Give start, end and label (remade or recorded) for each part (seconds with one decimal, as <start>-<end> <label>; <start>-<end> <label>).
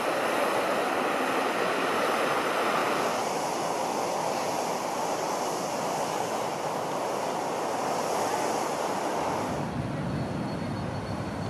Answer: 0.0-2.8 recorded; 2.8-3.4 remade; 3.4-11.5 recorded